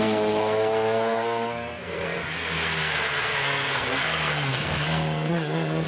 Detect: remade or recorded remade